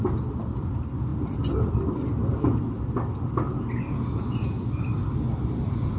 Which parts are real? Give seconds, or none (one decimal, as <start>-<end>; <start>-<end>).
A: 0.0-6.0